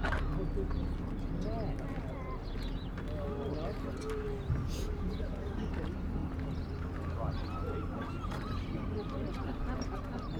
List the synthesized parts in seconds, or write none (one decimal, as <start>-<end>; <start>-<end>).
none